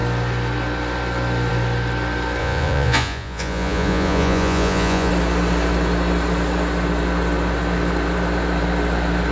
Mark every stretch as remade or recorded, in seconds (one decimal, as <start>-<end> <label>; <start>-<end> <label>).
0.0-2.4 recorded; 2.4-5.1 remade; 5.1-9.3 recorded